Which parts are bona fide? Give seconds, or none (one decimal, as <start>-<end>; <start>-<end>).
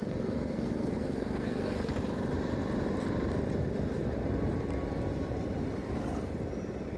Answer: 1.9-7.0